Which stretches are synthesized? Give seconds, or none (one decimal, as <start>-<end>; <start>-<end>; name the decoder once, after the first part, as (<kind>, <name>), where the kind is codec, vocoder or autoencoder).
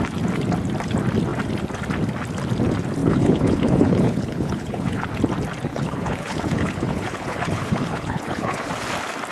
3.0-5.1 (codec, HILCodec); 5.7-8.7